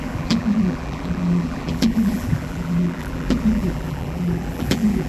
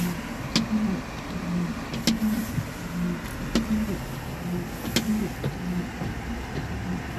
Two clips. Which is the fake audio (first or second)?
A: first